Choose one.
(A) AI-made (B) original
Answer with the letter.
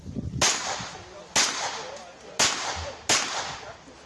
B